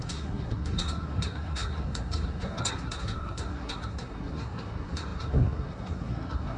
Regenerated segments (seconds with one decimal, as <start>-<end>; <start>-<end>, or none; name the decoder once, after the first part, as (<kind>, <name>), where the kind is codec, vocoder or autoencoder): 0.0-6.6 (codec, SNAC)

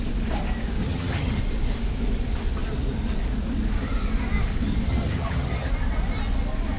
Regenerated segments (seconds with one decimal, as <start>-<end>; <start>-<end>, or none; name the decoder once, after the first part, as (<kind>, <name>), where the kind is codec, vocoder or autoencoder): 0.8-1.4 (vocoder, HiFi-GAN); 4.9-5.7